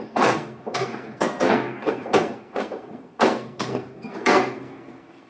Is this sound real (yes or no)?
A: no